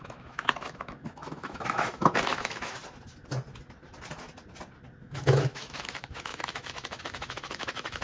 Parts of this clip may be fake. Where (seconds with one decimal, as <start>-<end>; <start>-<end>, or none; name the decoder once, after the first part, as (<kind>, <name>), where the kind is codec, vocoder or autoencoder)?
0.0-2.8 (autoencoder, DAC-VAE); 5.0-8.0